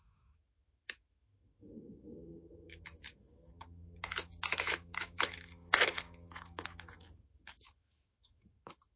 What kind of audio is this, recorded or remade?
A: remade